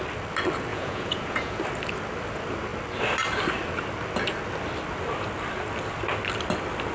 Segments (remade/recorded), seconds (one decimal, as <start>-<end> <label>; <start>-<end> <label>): 0.0-0.7 recorded; 0.7-1.6 remade; 1.6-6.9 recorded